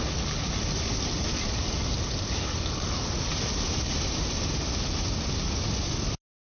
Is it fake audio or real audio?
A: real